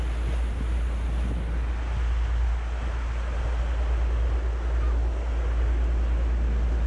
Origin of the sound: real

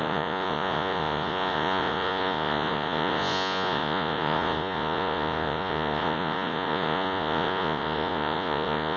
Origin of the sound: fake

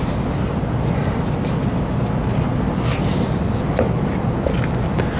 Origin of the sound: real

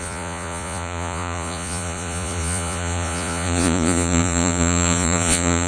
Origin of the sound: fake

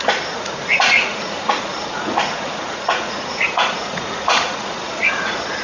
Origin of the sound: fake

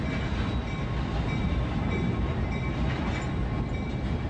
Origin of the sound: real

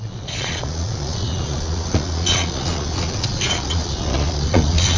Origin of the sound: fake